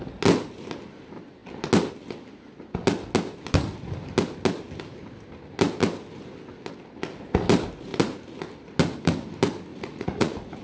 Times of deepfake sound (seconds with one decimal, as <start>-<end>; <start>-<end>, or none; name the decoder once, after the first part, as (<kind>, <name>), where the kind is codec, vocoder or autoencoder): 9.7-10.6 (vocoder, Vocos)